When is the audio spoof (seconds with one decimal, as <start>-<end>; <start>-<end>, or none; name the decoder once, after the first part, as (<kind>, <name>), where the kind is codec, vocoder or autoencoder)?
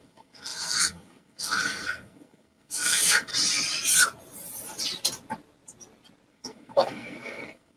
0.0-3.3 (codec, SNAC); 6.3-7.8